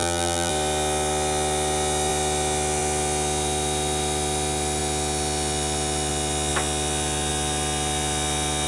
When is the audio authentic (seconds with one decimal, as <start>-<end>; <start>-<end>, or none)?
0.5-8.7